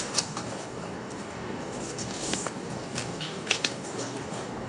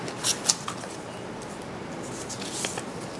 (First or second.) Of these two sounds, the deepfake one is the first